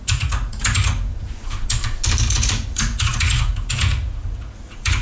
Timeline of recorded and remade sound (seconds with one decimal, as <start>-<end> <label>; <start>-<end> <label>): 0.0-1.8 remade; 1.8-2.3 recorded; 2.3-5.0 remade